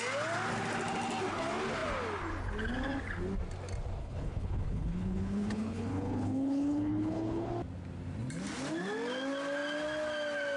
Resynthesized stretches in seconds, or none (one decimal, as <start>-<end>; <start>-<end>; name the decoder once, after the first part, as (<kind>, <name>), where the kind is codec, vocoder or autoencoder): 4.0-7.5 (codec, HILCodec)